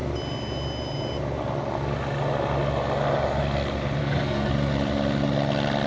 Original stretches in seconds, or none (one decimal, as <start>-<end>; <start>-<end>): 0.0-4.0; 4.5-5.9